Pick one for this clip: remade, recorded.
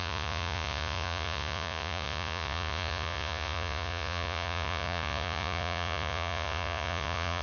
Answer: remade